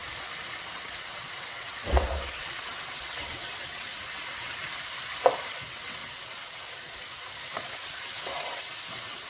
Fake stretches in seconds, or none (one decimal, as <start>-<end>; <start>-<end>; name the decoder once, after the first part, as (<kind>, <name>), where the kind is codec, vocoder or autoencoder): 0.6-4.6 (vocoder, WaveNeXt); 5.5-9.3